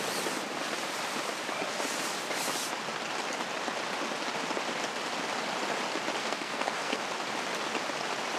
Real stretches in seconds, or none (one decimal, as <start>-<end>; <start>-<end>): 0.0-6.2; 7.0-8.4